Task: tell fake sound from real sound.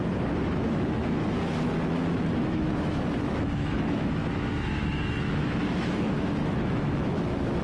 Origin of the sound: fake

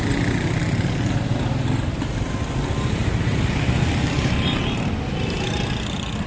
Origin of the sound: real